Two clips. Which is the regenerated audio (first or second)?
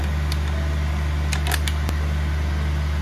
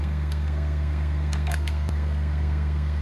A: second